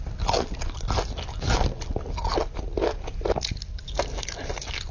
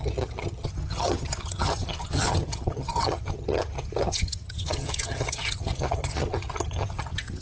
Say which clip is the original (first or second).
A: first